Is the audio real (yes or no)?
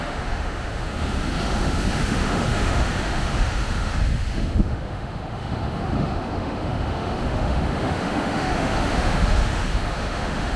no